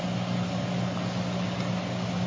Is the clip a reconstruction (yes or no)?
no